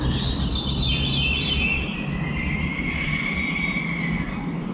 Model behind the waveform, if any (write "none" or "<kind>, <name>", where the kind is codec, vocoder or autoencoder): none